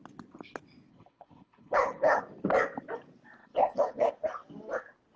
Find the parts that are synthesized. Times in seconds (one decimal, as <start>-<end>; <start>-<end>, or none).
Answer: 0.9-2.2; 3.4-4.1